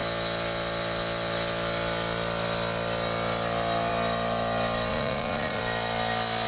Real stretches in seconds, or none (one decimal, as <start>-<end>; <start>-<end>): 0.0-4.9; 5.6-6.5